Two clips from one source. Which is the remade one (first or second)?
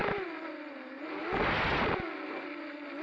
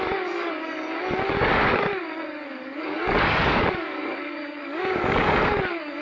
second